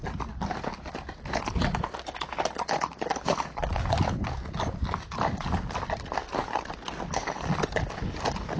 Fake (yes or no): no